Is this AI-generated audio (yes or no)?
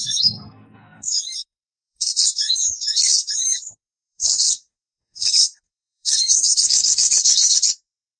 yes